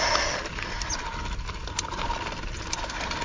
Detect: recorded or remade recorded